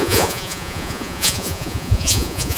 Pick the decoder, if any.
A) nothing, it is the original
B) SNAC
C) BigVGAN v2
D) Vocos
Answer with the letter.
D